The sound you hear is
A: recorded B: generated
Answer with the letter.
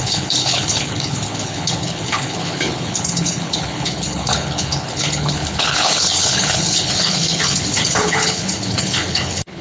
B